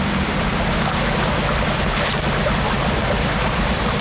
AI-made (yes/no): no